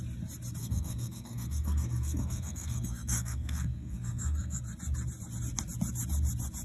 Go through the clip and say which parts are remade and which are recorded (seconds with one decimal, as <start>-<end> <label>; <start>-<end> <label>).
0.0-0.6 recorded; 0.6-4.6 remade; 4.6-6.6 recorded